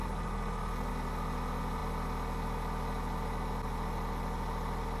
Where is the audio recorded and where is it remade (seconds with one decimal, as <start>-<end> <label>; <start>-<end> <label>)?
0.0-0.9 remade; 0.9-5.0 recorded